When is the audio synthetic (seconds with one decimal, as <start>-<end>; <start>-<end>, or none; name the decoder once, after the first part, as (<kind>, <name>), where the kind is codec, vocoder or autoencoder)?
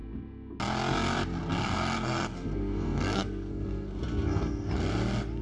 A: 1.6-4.7 (codec, SNAC)